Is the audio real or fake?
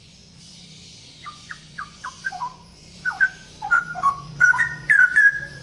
fake